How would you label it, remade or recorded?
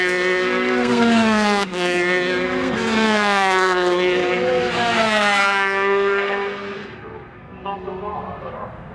remade